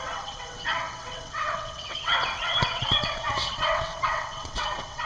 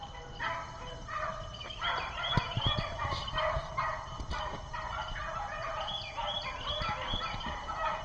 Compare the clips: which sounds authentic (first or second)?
second